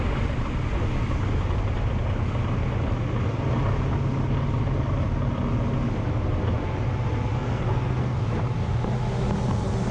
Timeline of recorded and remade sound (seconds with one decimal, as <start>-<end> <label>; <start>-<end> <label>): 0.0-7.3 recorded; 7.3-8.2 remade; 8.2-9.9 recorded